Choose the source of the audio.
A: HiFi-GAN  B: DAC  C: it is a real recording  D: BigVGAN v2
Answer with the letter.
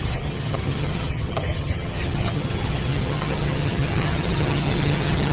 A